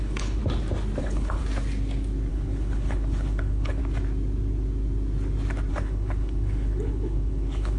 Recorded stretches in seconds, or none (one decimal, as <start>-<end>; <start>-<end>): 0.4-1.0; 1.4-2.3; 3.8-5.7